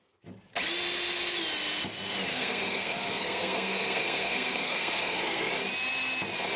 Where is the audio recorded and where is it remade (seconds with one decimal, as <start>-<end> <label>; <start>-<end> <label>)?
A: 0.0-2.3 recorded; 2.3-5.5 remade; 5.5-6.6 recorded